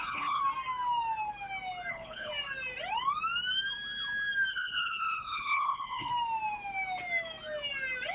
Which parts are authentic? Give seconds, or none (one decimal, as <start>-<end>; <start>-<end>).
0.4-1.9; 2.3-4.5; 6.1-8.1

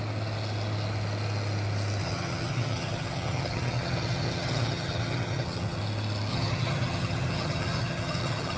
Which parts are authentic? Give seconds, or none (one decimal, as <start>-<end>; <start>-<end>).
0.0-2.0; 5.8-6.3

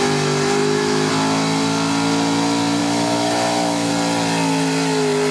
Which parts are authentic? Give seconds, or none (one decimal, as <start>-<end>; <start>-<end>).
0.0-0.6; 1.1-2.8; 3.9-5.3

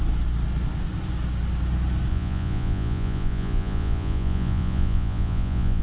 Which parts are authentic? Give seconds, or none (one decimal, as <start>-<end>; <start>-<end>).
0.0-2.1

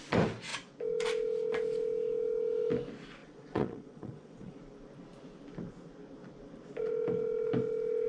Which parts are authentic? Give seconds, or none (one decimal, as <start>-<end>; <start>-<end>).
0.0-3.2; 4.6-8.1

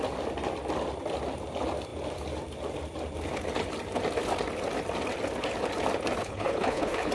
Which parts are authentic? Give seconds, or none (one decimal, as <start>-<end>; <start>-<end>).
0.0-6.2